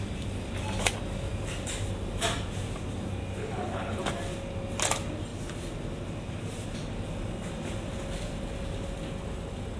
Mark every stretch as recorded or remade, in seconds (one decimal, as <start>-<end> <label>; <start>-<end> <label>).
0.0-3.4 recorded; 3.4-4.0 remade; 4.0-9.8 recorded